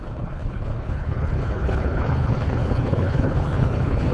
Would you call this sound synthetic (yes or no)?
yes